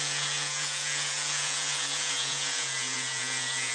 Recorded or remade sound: remade